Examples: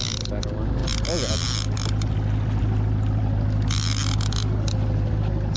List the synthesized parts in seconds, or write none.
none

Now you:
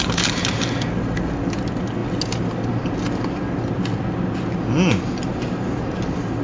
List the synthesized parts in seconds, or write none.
none

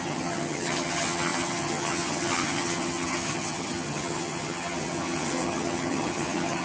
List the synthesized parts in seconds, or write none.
0.0-6.6 (vocoder, HiFi-GAN)